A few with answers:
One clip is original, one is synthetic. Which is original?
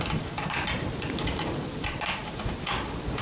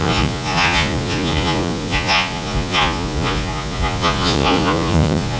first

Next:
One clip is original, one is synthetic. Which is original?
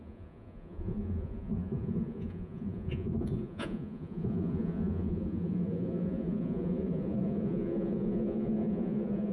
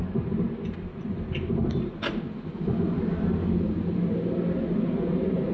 second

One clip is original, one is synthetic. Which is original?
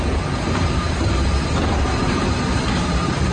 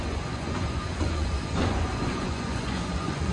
first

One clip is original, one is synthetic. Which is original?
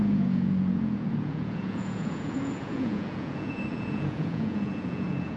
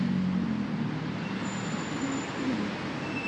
second